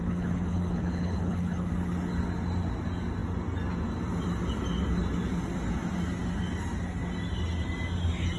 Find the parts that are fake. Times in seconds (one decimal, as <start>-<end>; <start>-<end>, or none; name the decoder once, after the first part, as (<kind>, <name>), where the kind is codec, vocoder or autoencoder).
0.0-1.7 (codec, HILCodec)